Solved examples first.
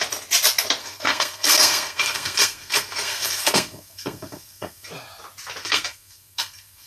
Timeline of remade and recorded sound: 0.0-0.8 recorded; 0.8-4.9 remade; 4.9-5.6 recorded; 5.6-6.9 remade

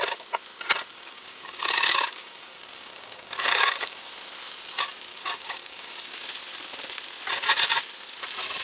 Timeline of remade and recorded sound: 0.0-0.9 recorded; 0.9-4.1 remade; 4.1-5.1 recorded; 5.1-6.2 remade; 6.2-8.6 recorded

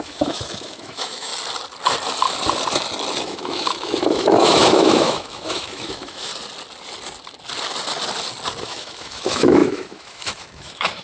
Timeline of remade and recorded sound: 0.0-1.3 remade; 1.3-3.2 recorded; 3.2-6.3 remade; 6.3-8.6 recorded; 8.6-11.0 remade

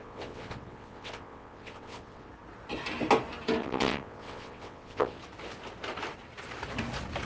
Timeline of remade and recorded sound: 0.0-2.3 remade; 2.3-3.6 recorded; 3.6-5.2 remade; 5.2-7.3 recorded

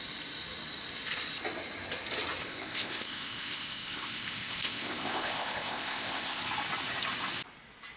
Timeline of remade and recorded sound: 0.0-2.4 recorded; 2.4-6.4 remade; 6.4-8.0 recorded